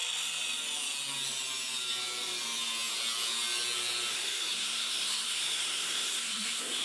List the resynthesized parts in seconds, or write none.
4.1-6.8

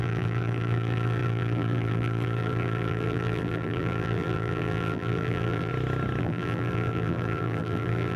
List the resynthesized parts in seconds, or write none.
0.0-5.7; 6.2-8.2

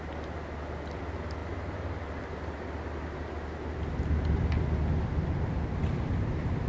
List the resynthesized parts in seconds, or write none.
none

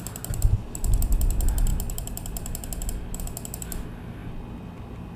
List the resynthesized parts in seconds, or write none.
none

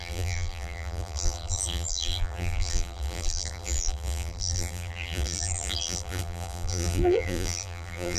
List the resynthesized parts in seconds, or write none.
0.0-8.2

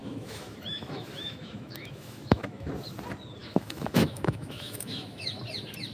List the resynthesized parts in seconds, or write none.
0.0-2.7; 3.4-5.4

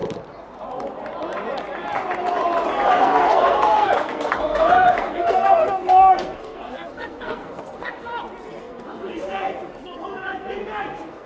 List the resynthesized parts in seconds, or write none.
2.9-8.1; 8.6-11.3

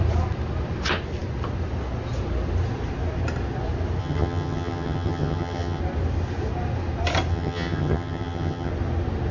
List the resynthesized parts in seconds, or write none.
4.0-5.8; 7.3-8.7